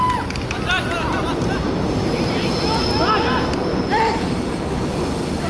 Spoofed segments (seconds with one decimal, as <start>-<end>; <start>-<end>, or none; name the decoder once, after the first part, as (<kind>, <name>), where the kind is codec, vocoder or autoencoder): 3.7-4.6 (vocoder, BigVGAN v2)